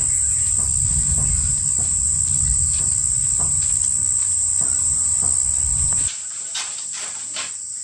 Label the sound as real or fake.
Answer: real